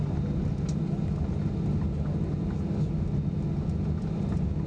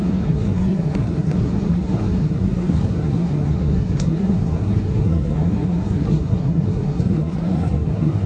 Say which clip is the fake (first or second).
second